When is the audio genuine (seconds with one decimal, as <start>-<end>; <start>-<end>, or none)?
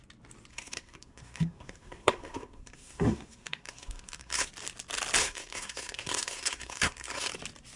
0.0-0.5; 4.5-5.2; 7.3-7.8